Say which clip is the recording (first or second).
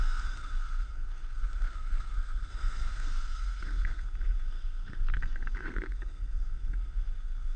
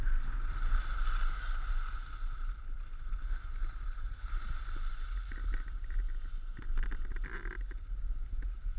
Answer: second